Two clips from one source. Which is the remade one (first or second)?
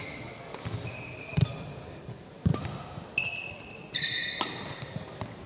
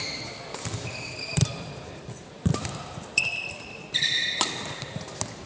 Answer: second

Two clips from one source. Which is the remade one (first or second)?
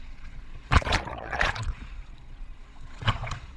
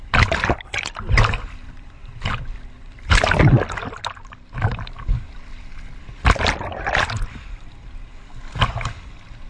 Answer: first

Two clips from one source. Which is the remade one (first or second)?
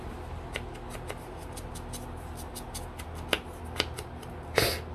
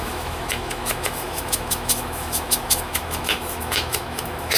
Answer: second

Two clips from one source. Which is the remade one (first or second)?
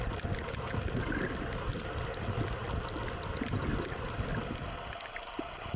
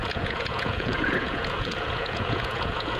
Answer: second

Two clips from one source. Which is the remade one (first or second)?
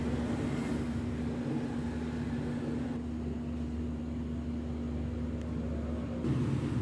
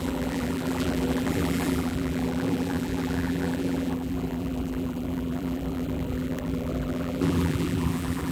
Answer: second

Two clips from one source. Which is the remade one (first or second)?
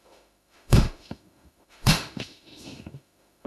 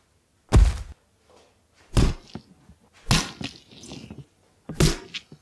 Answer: first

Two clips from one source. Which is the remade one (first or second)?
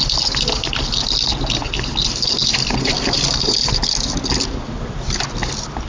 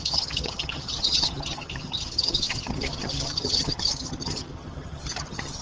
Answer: second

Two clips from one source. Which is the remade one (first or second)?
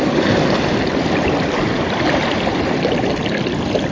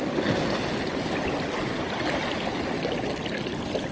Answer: first